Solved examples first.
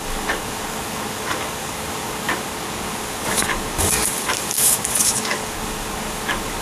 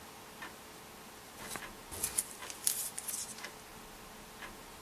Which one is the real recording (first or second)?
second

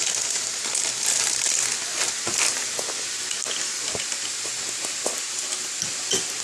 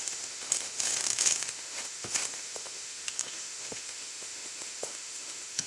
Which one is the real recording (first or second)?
first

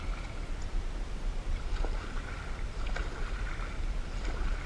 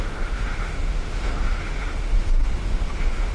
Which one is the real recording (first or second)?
first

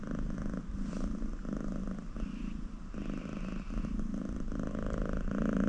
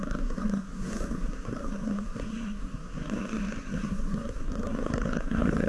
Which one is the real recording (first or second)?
first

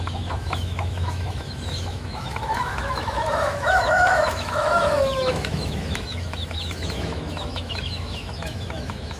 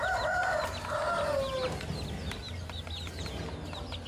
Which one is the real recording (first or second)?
second